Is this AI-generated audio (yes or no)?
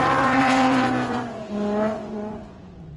yes